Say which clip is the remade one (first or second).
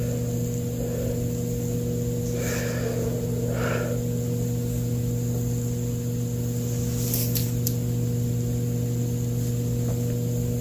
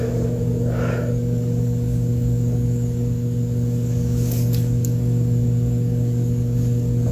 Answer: second